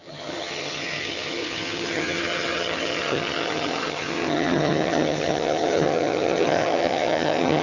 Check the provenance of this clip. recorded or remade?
remade